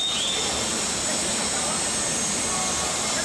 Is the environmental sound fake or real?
real